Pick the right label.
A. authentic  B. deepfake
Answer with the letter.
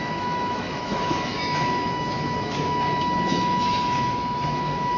B